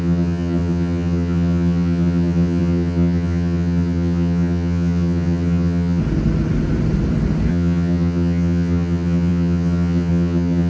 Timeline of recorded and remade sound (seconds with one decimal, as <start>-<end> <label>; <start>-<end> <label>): 0.0-6.0 remade; 6.0-7.5 recorded; 7.5-10.7 remade